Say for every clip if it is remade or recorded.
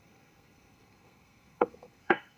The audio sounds remade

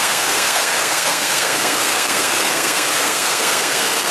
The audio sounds remade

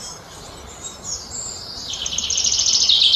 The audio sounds recorded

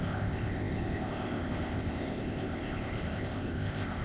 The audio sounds remade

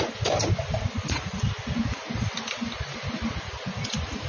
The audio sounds recorded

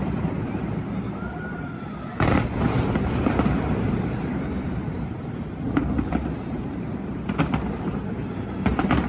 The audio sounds remade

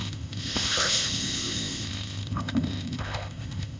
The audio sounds remade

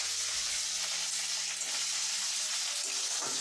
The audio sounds recorded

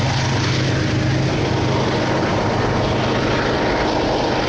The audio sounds recorded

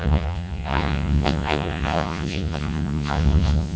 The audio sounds remade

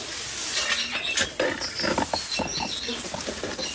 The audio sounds recorded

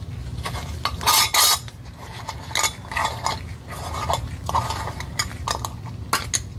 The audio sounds recorded